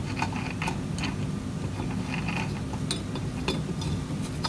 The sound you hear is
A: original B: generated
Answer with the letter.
A